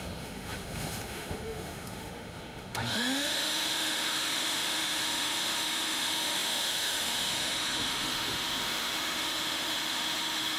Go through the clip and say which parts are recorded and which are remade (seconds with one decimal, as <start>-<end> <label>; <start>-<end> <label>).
0.0-10.6 remade